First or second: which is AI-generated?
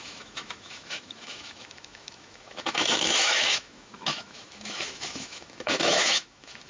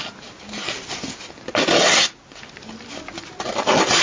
first